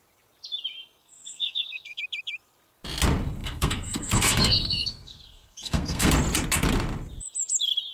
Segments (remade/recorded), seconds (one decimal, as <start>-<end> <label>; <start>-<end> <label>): 0.0-1.0 recorded; 1.0-2.0 remade; 2.0-3.4 recorded; 3.4-6.1 remade; 6.1-7.9 recorded